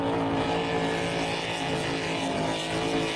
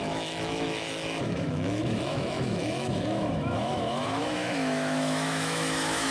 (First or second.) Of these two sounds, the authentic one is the first